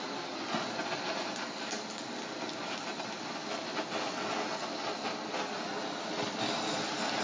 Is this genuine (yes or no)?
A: yes